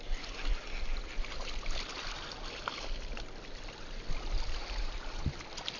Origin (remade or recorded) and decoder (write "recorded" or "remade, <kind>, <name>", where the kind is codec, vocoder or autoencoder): recorded